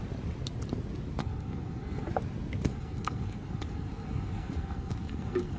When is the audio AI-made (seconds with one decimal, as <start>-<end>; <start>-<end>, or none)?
1.2-2.1; 2.7-5.6